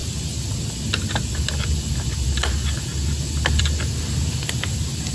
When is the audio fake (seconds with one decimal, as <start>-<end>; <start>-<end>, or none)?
none